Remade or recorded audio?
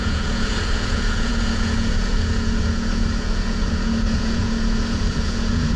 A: remade